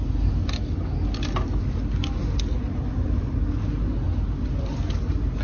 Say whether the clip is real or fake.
real